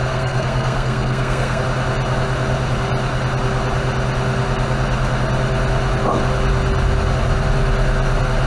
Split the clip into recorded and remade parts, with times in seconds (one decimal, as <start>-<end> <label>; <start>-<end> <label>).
0.0-1.6 remade; 1.6-8.5 recorded